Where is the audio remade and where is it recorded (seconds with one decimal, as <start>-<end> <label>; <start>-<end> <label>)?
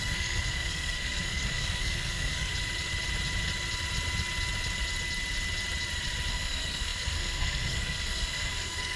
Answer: 0.0-2.5 remade; 2.5-6.3 recorded; 6.3-9.0 remade